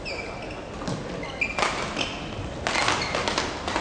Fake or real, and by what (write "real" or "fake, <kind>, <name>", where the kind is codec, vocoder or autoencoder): real